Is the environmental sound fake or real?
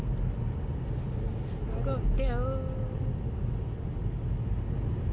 real